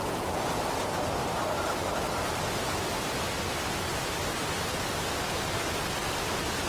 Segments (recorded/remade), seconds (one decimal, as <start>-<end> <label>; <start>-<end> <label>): 0.0-0.6 remade; 0.6-6.7 recorded